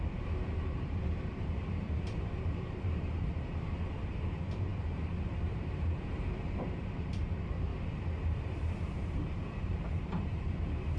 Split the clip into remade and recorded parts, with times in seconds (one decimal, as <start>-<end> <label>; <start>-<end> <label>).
0.0-7.7 remade; 7.7-8.2 recorded; 8.2-11.0 remade